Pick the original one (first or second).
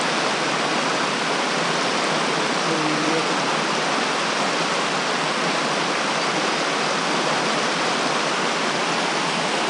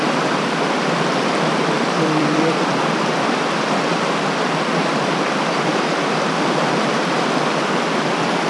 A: first